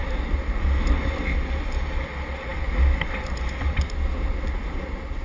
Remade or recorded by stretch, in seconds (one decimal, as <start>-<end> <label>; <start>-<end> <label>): 0.0-5.2 recorded